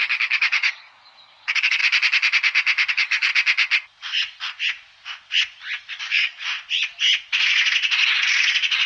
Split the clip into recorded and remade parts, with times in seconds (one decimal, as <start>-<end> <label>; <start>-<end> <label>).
0.0-1.8 remade; 1.8-2.9 recorded; 2.9-3.3 remade; 3.3-6.0 recorded; 6.0-6.4 remade; 6.4-8.9 recorded